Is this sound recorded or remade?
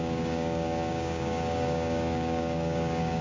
remade